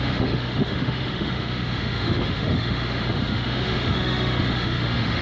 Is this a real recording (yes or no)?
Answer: no